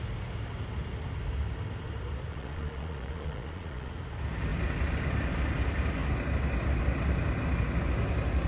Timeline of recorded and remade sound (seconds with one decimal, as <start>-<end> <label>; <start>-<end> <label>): 0.0-2.3 recorded; 2.3-3.9 remade; 3.9-8.5 recorded